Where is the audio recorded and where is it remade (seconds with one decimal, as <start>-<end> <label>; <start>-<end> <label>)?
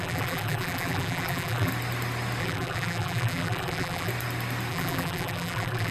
0.0-1.7 remade; 1.7-2.4 recorded; 2.4-4.1 remade; 4.1-4.7 recorded; 4.7-5.9 remade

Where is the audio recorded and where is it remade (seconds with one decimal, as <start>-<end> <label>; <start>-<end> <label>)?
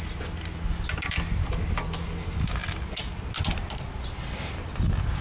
0.0-5.2 recorded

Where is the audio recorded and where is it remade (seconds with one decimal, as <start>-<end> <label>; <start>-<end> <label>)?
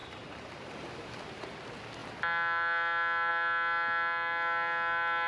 0.0-1.2 remade; 1.2-5.3 recorded